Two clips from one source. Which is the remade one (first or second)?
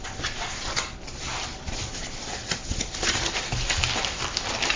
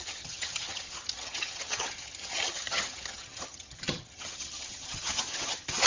second